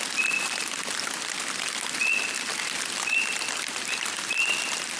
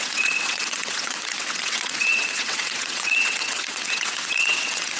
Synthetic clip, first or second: second